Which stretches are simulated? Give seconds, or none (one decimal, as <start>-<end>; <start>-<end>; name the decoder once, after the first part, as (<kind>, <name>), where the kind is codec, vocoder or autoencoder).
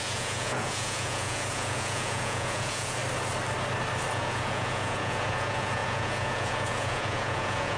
0.0-3.0 (vocoder, Vocos); 4.1-7.8